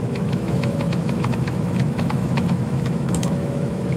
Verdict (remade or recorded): remade